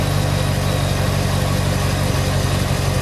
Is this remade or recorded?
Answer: recorded